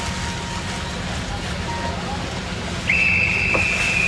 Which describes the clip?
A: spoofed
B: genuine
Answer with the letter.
B